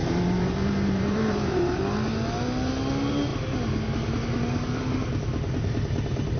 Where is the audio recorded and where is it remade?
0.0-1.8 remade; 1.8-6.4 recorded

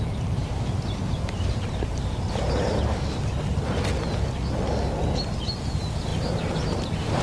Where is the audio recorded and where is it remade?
0.0-0.4 recorded; 0.4-3.0 remade; 3.0-6.1 recorded; 6.1-7.2 remade

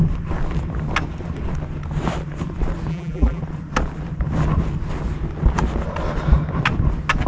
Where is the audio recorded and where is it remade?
0.0-2.9 recorded; 2.9-3.4 remade; 3.4-7.3 recorded

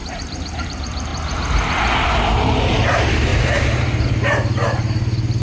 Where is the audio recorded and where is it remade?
0.0-1.1 remade; 1.1-2.3 recorded; 2.3-5.4 remade

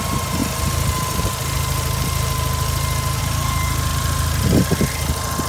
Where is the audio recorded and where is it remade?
0.0-0.4 remade; 0.4-3.2 recorded; 3.2-3.9 remade; 3.9-5.5 recorded

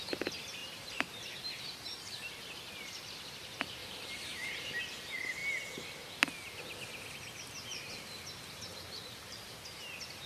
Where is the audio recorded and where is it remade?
0.0-0.6 recorded; 0.6-2.8 remade; 2.8-3.8 recorded; 3.8-4.8 remade; 4.8-8.7 recorded; 8.7-9.9 remade; 9.9-10.3 recorded